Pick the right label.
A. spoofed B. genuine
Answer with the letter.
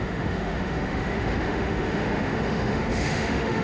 A